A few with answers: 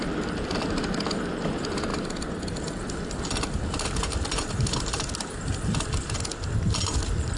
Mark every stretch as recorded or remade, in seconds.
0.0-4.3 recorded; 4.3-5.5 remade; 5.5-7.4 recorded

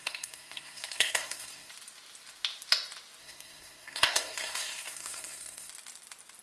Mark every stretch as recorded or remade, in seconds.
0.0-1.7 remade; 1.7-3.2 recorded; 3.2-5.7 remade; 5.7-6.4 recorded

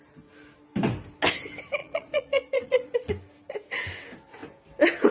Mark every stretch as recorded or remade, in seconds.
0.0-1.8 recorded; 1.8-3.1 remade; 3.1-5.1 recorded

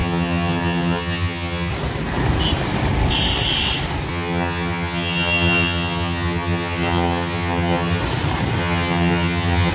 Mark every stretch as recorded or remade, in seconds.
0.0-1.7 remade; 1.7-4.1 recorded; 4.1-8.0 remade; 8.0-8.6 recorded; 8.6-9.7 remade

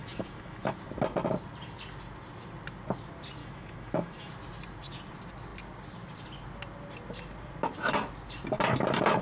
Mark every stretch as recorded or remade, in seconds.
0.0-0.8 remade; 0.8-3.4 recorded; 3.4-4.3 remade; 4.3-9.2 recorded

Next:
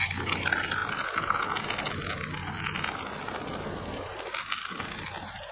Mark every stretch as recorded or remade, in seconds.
0.0-5.5 recorded

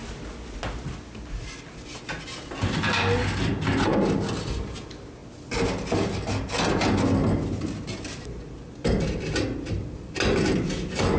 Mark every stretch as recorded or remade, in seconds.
0.0-11.2 recorded

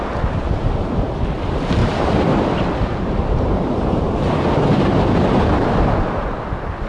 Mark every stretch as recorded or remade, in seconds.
0.0-1.8 recorded; 1.8-5.9 remade; 5.9-6.9 recorded